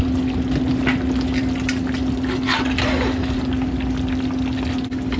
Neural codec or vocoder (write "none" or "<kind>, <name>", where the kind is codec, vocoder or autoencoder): none